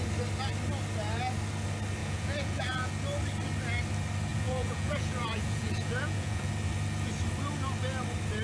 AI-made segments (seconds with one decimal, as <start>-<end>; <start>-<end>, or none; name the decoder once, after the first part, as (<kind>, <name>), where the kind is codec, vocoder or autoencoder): 2.0-2.9 (vocoder, Vocos); 4.3-6.5